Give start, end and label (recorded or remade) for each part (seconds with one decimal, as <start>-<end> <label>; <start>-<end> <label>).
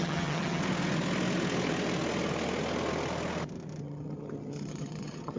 0.0-0.6 remade; 0.6-3.8 recorded; 3.8-5.4 remade